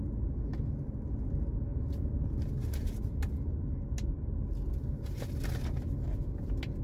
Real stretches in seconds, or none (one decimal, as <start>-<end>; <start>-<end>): 0.0-6.8